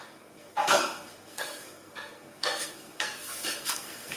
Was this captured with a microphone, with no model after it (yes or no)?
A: no